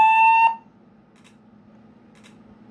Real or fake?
real